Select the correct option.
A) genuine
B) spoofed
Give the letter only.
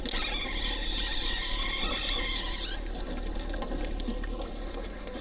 A